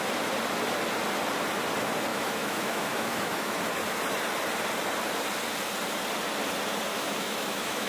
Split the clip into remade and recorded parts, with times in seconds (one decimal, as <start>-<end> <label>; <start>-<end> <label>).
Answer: 0.0-2.1 recorded; 2.1-3.6 remade; 3.6-6.9 recorded; 6.9-7.9 remade